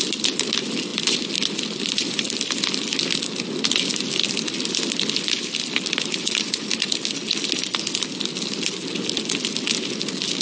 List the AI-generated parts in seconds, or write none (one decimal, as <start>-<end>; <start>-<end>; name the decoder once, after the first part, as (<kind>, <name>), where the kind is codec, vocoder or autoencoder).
6.2-6.7 (vocoder, Vocos)